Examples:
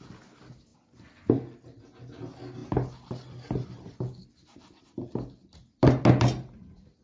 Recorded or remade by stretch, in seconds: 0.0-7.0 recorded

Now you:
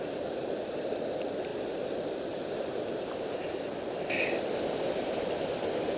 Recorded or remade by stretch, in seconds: 0.0-6.0 recorded